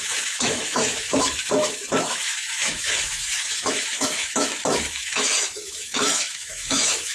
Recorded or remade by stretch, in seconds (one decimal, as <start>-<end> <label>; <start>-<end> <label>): 0.0-7.1 remade